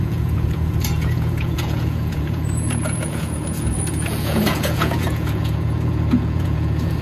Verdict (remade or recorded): remade